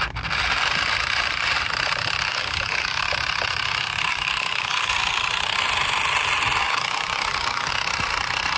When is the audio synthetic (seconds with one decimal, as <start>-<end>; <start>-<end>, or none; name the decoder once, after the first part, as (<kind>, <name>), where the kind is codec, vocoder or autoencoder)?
2.3-3.0 (codec, DAC); 4.1-4.9; 6.6-7.7